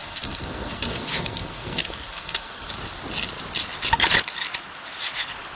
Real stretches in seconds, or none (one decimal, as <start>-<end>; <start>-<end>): 2.7-5.6